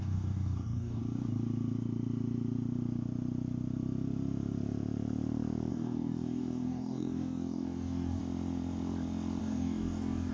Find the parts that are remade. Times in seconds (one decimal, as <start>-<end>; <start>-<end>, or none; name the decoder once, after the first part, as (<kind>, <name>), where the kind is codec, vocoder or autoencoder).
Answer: 0.0-1.0 (codec, DAC); 5.7-8.2; 9.4-10.3